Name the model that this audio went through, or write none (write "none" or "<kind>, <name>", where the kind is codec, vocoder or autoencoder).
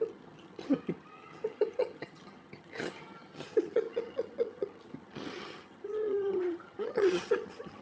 vocoder, HiFi-GAN